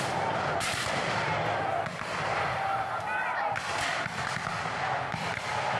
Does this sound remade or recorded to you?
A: recorded